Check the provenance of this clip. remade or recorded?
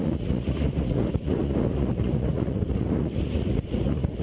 remade